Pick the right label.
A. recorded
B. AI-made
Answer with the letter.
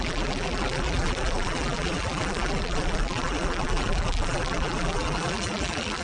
B